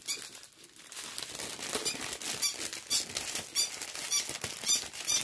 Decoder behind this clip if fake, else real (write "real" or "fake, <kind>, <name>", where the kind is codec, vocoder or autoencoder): real